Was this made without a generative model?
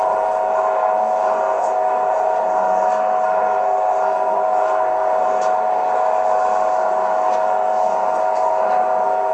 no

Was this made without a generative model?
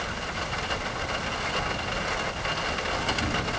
yes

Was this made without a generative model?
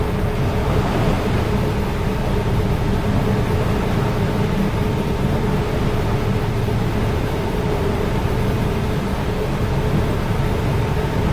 yes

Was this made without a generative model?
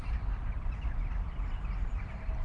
yes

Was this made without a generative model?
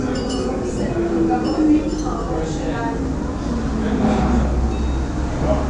yes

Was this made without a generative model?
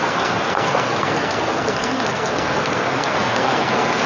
no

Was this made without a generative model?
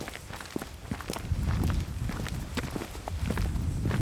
yes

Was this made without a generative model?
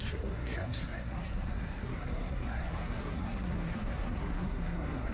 no